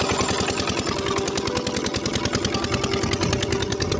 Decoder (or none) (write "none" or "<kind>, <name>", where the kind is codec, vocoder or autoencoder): none